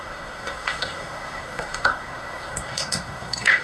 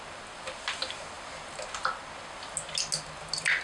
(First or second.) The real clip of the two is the second